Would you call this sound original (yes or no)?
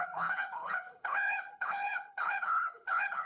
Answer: no